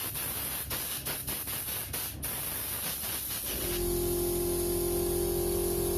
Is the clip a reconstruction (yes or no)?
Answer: no